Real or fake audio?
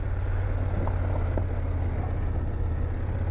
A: real